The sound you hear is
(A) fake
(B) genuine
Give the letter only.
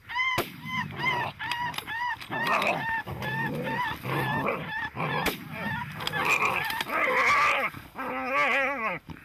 B